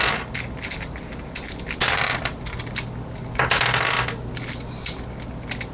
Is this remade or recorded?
recorded